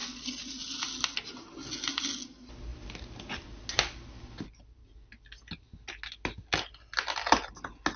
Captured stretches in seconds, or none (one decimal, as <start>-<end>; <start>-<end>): 0.0-8.0